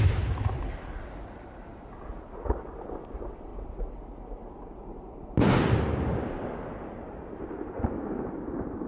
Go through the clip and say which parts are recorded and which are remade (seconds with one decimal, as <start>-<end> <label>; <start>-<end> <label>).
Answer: 0.0-8.9 recorded